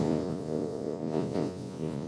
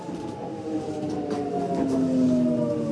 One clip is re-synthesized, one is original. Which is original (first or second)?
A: second